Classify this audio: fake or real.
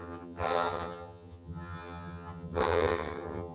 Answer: fake